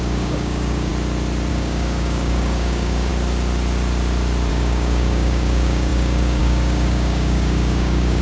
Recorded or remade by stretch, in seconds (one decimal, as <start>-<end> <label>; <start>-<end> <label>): 0.0-0.9 remade; 0.9-1.5 recorded; 1.5-3.1 remade; 3.1-4.5 recorded; 4.5-8.2 remade